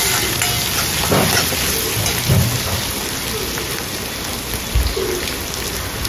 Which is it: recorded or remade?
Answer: recorded